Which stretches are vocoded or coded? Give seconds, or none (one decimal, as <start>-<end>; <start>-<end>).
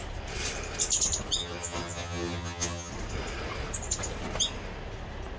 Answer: 1.4-2.9